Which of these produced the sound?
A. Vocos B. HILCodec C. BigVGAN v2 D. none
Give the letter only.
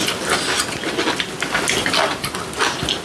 D